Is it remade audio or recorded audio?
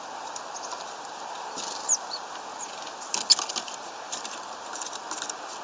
recorded